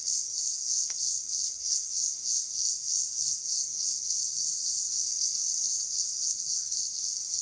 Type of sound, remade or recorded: remade